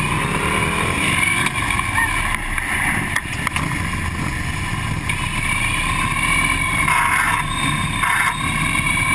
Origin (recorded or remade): recorded